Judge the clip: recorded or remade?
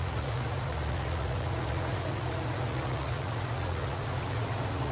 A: remade